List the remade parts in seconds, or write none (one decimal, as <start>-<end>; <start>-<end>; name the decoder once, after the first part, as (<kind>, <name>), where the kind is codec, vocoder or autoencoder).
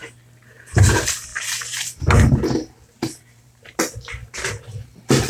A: 1.3-4.5 (vocoder, BigVGAN v2)